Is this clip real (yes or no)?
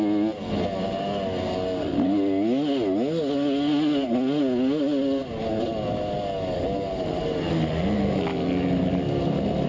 yes